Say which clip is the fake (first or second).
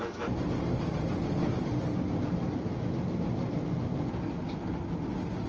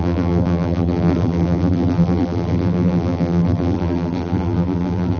second